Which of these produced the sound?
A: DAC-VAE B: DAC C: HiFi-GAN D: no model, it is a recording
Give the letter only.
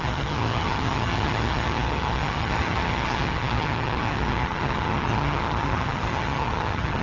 C